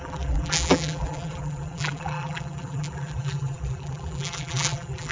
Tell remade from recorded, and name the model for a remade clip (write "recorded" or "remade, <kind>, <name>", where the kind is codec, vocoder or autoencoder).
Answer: remade, vocoder, BigVGAN v2